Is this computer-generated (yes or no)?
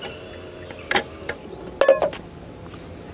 no